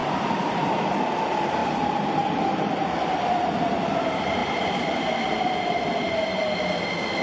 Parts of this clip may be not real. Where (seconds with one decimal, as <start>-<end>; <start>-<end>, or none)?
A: 1.6-3.3; 4.4-6.1